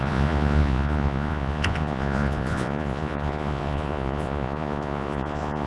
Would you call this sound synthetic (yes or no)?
yes